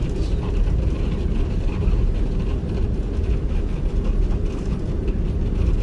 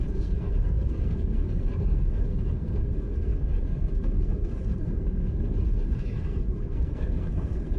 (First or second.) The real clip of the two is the first